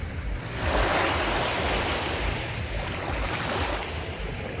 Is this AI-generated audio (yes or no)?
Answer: no